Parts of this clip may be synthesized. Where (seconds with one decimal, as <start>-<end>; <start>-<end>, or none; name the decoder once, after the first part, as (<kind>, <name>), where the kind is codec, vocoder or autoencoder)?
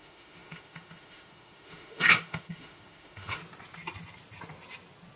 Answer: 0.0-3.4 (autoencoder, DAC-VAE)